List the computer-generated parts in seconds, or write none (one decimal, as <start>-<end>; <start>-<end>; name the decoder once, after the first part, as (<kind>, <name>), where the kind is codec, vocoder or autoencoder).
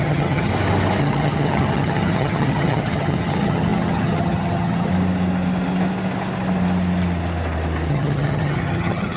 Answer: 0.0-0.5 (vocoder, HiFi-GAN); 1.0-4.9; 7.9-9.2